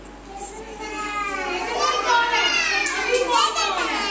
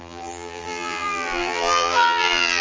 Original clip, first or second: first